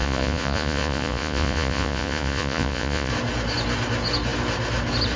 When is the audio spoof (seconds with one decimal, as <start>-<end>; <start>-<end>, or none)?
0.0-3.1